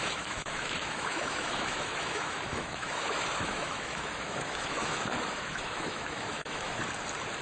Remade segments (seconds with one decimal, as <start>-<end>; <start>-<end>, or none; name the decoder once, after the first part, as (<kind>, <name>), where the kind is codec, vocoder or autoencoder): 0.0-6.8 (autoencoder, DAC-VAE)